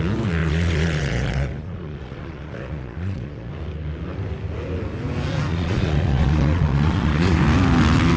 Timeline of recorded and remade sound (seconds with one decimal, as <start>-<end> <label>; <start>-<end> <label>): 0.0-0.4 recorded; 0.4-3.5 remade; 3.5-5.5 recorded; 5.5-7.4 remade; 7.4-8.2 recorded